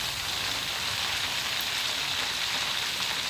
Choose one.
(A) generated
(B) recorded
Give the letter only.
A